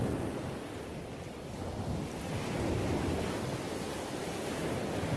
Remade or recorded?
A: recorded